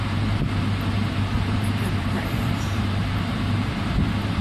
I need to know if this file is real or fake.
fake